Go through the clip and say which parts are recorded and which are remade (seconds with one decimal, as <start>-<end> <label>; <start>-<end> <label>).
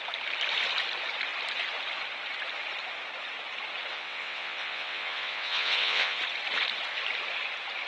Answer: 0.0-3.9 recorded; 3.9-6.2 remade; 6.2-7.9 recorded